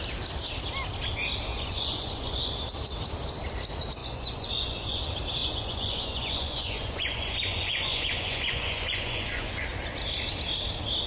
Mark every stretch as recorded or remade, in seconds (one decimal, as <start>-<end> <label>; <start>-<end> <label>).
0.0-1.5 recorded; 1.5-2.5 remade; 2.5-4.0 recorded; 4.0-5.0 remade; 5.0-5.4 recorded; 5.4-9.6 remade; 9.6-11.1 recorded